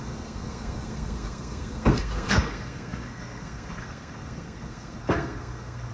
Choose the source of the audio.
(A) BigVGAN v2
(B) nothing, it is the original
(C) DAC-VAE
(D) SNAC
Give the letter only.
D